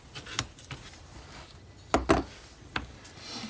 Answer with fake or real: real